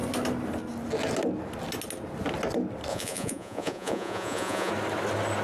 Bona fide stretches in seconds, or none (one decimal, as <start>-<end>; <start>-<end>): 0.0-2.9; 4.7-5.4